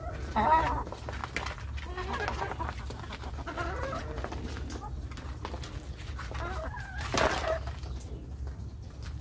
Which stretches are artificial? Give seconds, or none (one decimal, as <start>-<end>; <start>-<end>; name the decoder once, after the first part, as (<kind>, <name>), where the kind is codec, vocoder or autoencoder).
none